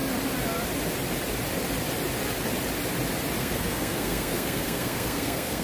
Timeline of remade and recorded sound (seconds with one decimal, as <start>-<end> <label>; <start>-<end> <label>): 0.0-3.4 recorded; 3.4-5.6 remade